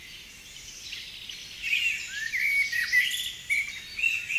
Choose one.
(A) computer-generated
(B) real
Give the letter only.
B